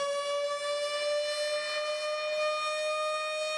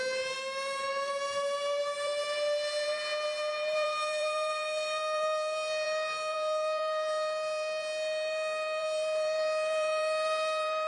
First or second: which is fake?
second